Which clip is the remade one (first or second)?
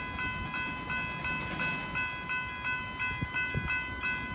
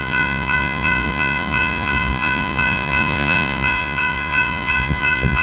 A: second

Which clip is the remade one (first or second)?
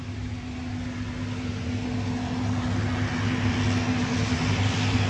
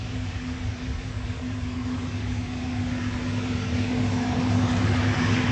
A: second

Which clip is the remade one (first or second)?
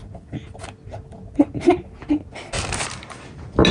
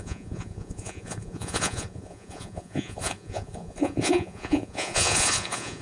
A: second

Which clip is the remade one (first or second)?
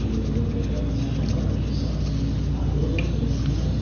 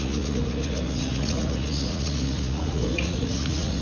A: second